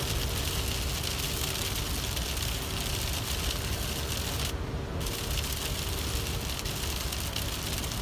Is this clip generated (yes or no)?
no